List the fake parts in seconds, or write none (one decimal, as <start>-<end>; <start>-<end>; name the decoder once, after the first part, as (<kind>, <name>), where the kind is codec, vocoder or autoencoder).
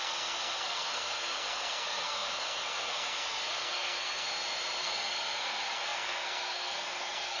0.0-4.3 (codec, SNAC); 4.8-7.4